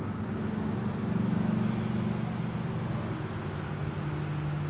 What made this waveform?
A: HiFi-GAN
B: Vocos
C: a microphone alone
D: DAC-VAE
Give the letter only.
C